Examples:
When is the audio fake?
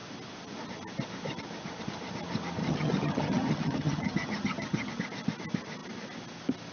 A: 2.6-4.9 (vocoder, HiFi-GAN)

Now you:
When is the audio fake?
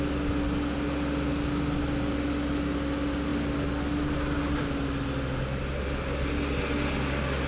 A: none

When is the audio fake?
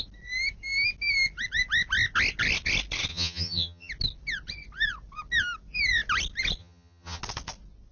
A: 3.1-3.9 (vocoder, HiFi-GAN); 6.6-7.2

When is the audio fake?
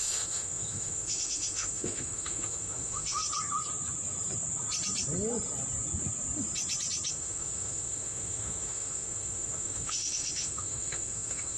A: 0.0-3.2 (autoencoder, DAC-VAE); 7.1-11.6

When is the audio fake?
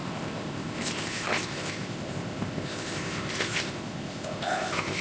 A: 0.0-5.0 (codec, ZipCodec)